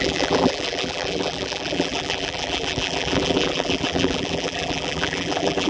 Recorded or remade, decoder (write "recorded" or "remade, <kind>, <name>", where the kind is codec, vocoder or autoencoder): remade, vocoder, BigVGAN v2